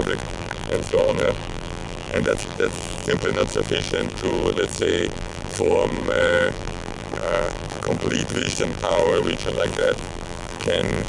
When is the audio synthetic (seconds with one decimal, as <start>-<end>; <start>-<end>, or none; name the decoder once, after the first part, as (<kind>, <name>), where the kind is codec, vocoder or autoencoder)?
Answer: 0.0-11.1 (vocoder, BigVGAN v2)